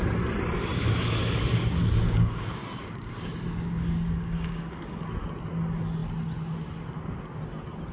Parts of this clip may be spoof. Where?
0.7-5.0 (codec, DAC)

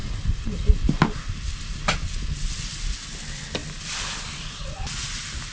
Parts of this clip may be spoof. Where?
0.0-1.2 (vocoder, BigVGAN v2); 3.6-4.2

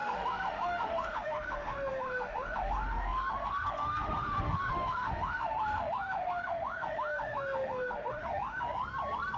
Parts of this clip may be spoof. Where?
0.0-8.8 (autoencoder, DAC-VAE)

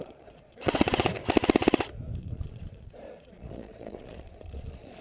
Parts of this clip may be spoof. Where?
0.0-1.2 (vocoder, Vocos); 2.2-5.0

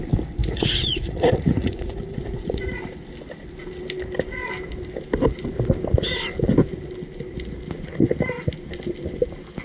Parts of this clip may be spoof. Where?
0.4-2.6 (vocoder, Vocos)

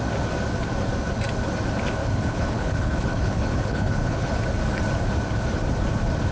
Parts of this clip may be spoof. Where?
2.0-4.4 (codec, HILCodec)

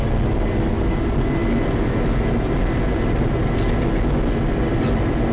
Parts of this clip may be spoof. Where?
none

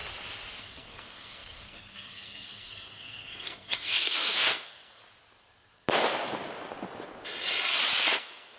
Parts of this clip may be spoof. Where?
0.6-5.0 (codec, SNAC); 8.0-8.6